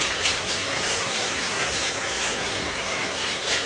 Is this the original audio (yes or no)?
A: no